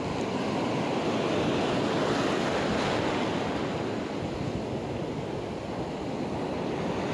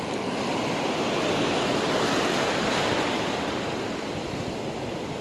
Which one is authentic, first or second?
first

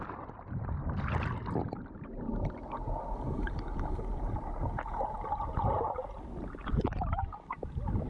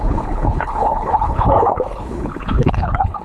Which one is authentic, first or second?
first